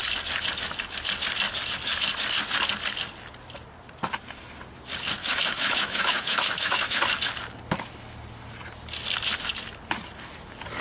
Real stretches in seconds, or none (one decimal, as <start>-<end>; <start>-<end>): 0.0-5.2; 7.0-10.8